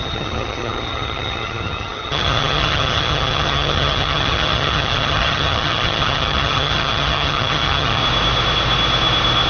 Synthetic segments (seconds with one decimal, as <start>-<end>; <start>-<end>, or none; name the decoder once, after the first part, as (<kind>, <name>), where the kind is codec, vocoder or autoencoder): 0.0-8.0 (vocoder, HiFi-GAN)